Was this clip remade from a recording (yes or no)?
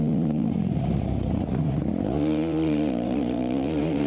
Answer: yes